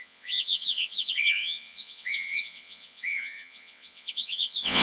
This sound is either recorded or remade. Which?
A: remade